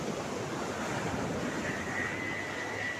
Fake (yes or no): no